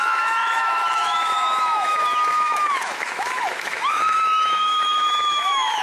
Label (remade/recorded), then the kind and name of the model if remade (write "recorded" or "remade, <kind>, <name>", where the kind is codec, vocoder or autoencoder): remade, autoencoder, DAC-VAE